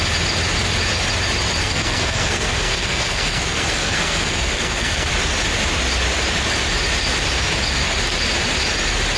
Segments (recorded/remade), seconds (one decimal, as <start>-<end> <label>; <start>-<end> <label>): 0.0-1.6 recorded; 1.6-5.1 remade; 5.1-9.2 recorded